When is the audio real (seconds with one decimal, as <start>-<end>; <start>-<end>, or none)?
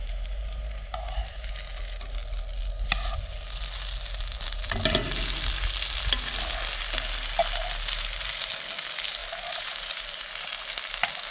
1.5-9.2; 10.2-11.3